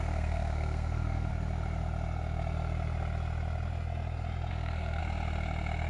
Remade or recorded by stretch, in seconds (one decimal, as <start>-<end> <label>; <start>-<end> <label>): 0.0-1.3 remade; 1.3-4.5 recorded; 4.5-5.0 remade; 5.0-5.9 recorded